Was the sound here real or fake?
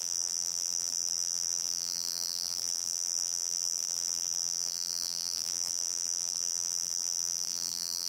fake